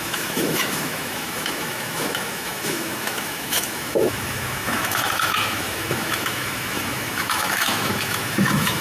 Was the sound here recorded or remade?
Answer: remade